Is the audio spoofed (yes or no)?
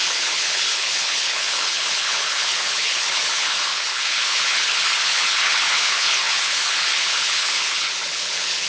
yes